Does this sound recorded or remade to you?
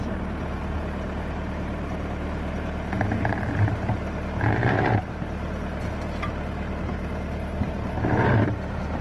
remade